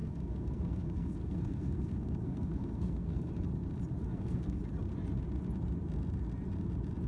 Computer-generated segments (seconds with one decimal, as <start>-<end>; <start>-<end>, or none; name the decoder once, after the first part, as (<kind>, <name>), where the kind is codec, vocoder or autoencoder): 0.0-3.3 (codec, SNAC); 4.0-4.6